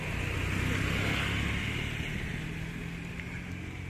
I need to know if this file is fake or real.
real